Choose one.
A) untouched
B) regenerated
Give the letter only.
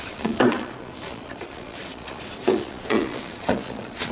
B